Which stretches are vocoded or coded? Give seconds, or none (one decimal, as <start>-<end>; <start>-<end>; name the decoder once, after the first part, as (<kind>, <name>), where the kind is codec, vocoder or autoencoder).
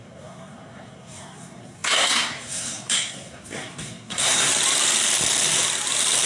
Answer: 0.0-4.5 (codec, SNAC)